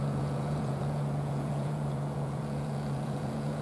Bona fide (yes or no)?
no